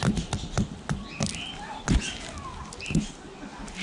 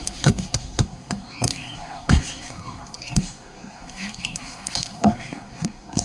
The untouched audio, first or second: first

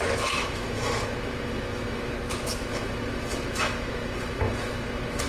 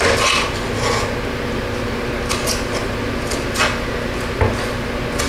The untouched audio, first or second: second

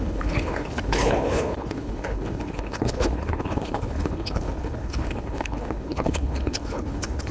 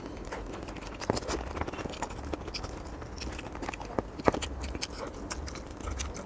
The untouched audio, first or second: second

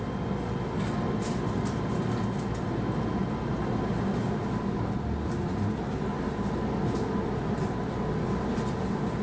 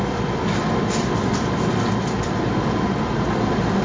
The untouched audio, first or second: first